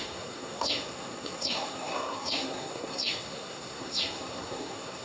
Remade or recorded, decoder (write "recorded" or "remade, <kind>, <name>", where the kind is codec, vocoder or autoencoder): remade, codec, SNAC